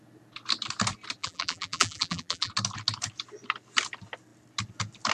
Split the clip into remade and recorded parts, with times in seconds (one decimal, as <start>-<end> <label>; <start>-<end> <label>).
0.0-1.2 recorded; 1.2-2.5 remade; 2.5-5.1 recorded